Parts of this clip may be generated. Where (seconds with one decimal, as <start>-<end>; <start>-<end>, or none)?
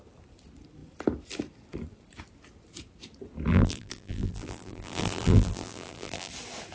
3.5-6.3